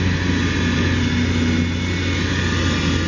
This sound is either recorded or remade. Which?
recorded